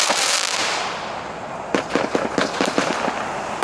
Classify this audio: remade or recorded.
recorded